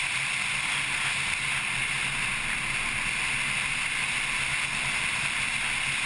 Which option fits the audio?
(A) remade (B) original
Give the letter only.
B